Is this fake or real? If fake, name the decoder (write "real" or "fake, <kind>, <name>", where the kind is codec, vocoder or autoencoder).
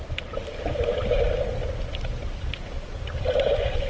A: real